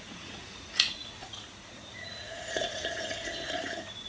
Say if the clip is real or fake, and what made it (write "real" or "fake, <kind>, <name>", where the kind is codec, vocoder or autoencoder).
fake, vocoder, Vocos